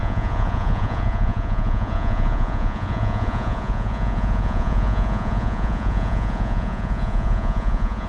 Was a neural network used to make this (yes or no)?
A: yes